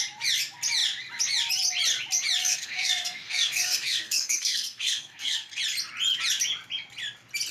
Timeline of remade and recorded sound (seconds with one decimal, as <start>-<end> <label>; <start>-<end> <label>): 0.0-2.4 recorded; 2.4-5.6 remade; 5.6-7.5 recorded